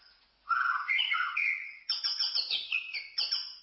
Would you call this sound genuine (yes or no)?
no